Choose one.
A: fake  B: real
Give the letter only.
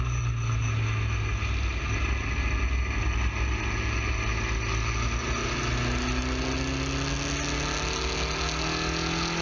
B